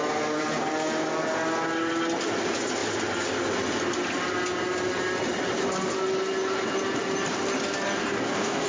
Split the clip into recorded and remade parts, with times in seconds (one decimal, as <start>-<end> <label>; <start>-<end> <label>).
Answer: 0.0-8.0 recorded; 8.0-8.7 remade